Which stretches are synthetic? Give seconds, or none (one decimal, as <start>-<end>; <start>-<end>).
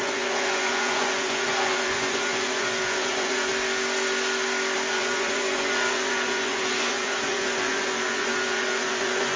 0.0-3.5; 4.9-9.4